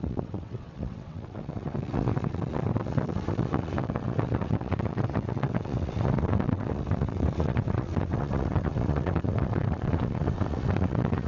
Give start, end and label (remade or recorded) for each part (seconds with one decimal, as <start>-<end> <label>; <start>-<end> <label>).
0.0-11.3 remade